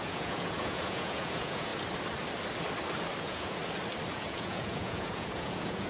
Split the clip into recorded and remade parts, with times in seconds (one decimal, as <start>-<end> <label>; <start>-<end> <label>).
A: 0.0-1.7 remade; 1.7-3.2 recorded; 3.2-3.6 remade; 3.6-4.1 recorded; 4.1-5.9 remade